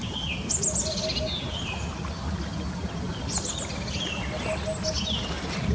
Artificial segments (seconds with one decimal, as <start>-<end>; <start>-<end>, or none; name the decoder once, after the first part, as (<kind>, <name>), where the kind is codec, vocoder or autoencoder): none